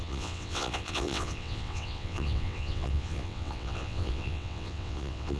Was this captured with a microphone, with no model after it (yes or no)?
no